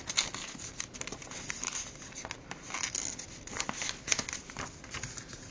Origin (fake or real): real